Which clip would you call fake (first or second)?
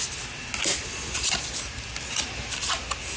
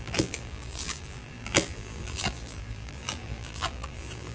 second